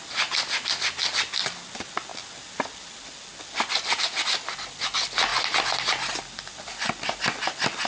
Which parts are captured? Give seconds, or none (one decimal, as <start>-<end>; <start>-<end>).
0.0-7.9